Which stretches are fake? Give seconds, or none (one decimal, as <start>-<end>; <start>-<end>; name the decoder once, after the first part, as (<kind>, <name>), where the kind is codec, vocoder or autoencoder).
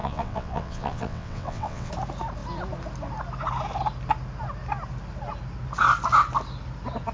0.0-1.9 (vocoder, WaveNeXt)